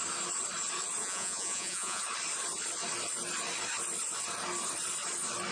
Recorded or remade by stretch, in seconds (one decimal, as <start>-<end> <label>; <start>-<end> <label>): 0.0-1.0 recorded; 1.0-2.0 remade; 2.0-5.5 recorded